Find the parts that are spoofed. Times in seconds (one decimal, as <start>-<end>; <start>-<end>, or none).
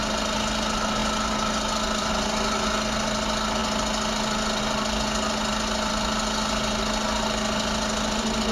none